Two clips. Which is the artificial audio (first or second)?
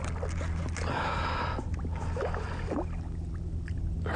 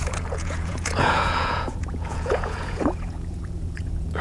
second